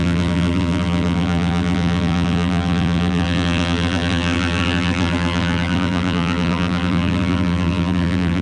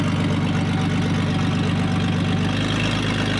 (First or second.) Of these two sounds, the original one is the second